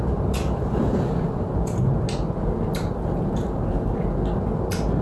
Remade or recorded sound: recorded